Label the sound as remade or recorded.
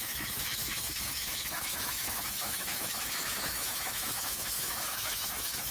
remade